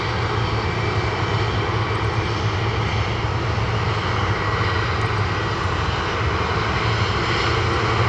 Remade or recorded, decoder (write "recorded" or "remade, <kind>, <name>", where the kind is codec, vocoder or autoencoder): recorded